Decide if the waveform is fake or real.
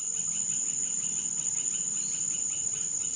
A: real